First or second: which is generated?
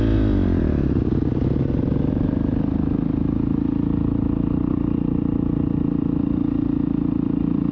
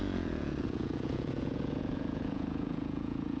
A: second